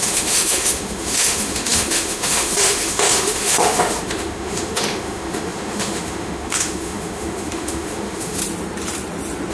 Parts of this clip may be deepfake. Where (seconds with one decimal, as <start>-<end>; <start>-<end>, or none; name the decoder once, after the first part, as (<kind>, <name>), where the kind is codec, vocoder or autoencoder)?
0.0-8.4 (autoencoder, DAC-VAE)